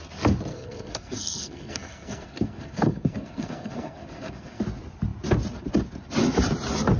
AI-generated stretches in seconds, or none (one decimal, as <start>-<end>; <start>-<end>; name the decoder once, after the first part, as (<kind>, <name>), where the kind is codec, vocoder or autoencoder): 0.5-4.6 (codec, SNAC)